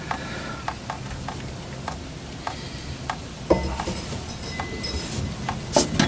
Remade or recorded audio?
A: recorded